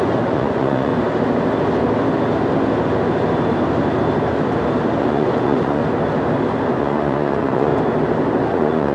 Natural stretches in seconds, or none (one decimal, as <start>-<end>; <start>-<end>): 0.9-5.0; 5.8-6.8; 7.7-8.5